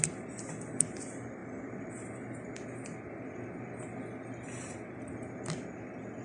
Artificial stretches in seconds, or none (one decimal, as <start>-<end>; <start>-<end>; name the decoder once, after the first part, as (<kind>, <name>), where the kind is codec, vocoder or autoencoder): 1.4-1.9 (vocoder, BigVGAN v2)